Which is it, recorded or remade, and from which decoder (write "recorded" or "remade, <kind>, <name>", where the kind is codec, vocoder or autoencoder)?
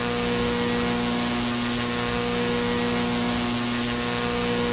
recorded